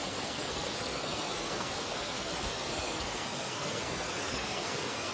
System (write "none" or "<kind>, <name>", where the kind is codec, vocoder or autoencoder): codec, SNAC